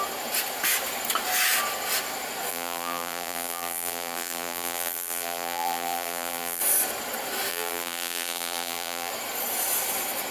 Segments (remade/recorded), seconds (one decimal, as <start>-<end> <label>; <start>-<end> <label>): 0.0-2.5 recorded; 2.5-6.6 remade; 6.6-7.5 recorded; 7.5-9.1 remade; 9.1-10.3 recorded